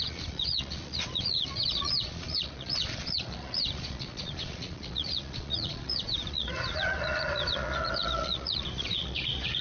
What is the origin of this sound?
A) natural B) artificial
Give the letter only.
B